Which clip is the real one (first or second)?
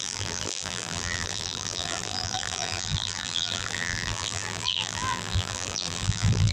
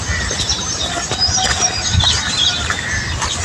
second